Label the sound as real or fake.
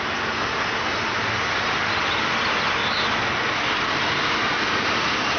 real